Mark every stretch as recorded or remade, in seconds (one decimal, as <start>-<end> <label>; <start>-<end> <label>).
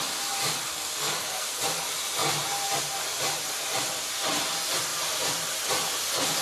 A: 0.0-0.7 recorded; 0.7-1.6 remade; 1.6-6.4 recorded